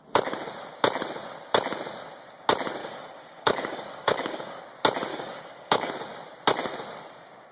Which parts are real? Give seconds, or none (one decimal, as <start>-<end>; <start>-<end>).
0.0-2.8; 4.6-5.1; 5.9-7.5